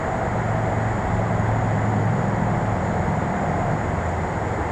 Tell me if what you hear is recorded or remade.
recorded